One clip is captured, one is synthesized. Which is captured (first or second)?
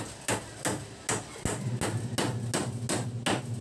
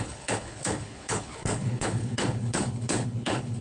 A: first